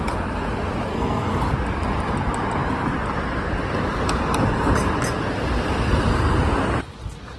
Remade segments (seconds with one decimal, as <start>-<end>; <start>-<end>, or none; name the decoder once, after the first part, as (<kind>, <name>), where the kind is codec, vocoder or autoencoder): 0.9-1.4 (codec, SNAC)